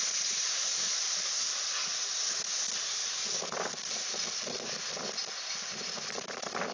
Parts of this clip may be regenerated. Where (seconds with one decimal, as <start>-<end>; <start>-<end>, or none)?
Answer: 0.7-1.4; 3.2-4.3